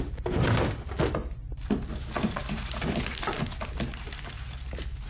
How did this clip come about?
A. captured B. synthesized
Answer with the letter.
A